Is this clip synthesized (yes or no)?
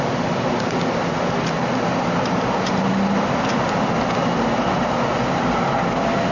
no